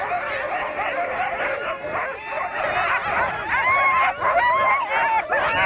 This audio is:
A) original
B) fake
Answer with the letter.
A